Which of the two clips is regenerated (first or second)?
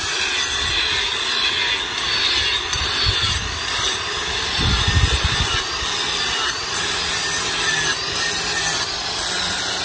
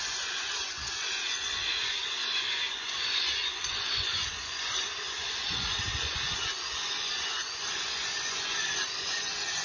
second